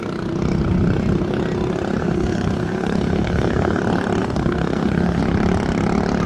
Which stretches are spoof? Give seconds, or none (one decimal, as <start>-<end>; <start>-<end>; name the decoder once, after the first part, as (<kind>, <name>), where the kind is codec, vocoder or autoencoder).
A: 2.0-3.8 (codec, SNAC); 4.2-5.2